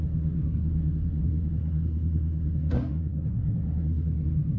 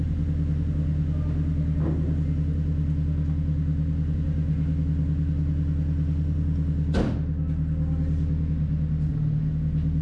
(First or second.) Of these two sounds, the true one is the second